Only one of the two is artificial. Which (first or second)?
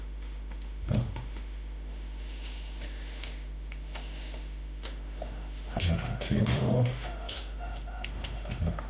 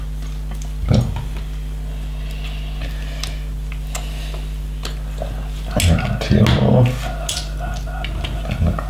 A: first